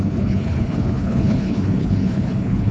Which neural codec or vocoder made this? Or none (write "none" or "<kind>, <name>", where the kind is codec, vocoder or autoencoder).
codec, HILCodec